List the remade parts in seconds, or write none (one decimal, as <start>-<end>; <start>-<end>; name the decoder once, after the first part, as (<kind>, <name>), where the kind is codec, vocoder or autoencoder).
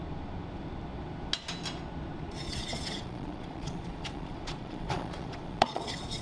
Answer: 2.3-6.2 (vocoder, Vocos)